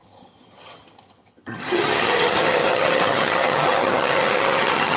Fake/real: fake